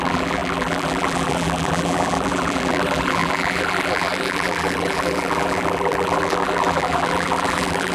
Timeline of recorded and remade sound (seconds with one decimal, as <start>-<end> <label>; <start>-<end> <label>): 0.0-7.9 remade